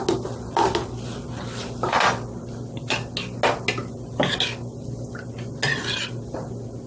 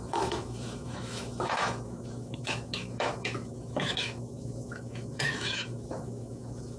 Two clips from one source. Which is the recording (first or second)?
first